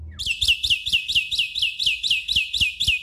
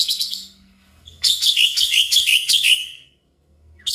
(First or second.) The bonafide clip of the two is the first